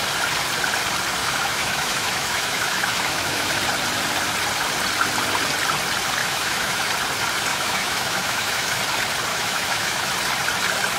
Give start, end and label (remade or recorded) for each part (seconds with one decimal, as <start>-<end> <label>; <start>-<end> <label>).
0.0-1.2 recorded; 1.2-3.5 remade; 3.5-6.2 recorded; 6.2-6.9 remade; 6.9-7.5 recorded; 7.5-8.8 remade; 8.8-9.3 recorded; 9.3-10.1 remade; 10.1-11.0 recorded